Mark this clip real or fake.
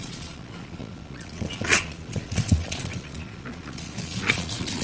fake